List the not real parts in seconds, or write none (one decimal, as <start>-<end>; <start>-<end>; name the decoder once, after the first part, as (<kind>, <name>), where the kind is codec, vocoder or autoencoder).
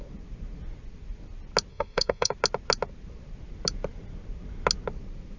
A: 1.7-2.3 (codec, SNAC)